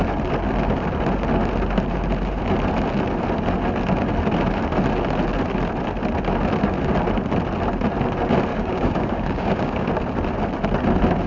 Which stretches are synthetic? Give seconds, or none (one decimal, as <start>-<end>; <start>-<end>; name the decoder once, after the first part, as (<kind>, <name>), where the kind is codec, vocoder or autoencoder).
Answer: 8.5-9.9 (codec, DAC)